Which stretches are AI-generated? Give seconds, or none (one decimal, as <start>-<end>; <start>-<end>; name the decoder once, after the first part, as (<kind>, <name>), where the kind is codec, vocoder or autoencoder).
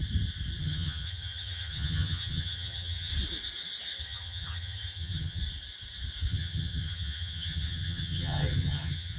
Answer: 0.6-3.1 (vocoder, HiFi-GAN); 4.0-5.4; 6.3-9.2